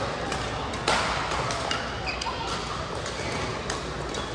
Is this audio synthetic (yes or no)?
no